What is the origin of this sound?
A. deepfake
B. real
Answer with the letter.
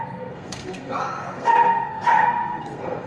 A